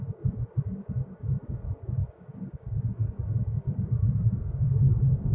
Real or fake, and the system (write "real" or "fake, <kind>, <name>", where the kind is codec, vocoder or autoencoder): fake, codec, DAC